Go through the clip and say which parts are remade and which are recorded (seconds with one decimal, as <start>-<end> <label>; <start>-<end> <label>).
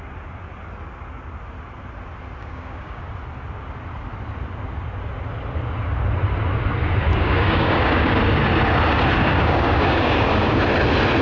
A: 0.0-2.4 recorded; 2.4-3.0 remade; 3.0-7.1 recorded; 7.1-8.2 remade; 8.2-9.2 recorded; 9.2-10.6 remade; 10.6-11.2 recorded